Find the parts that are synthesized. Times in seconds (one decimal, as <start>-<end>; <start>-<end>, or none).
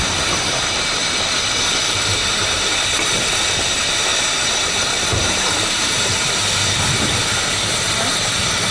0.0-1.0; 2.1-8.7